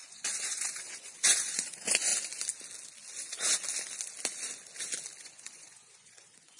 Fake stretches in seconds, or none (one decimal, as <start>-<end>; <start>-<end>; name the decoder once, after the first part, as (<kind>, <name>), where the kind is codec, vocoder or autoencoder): 0.0-2.1 (vocoder, Vocos); 5.2-6.6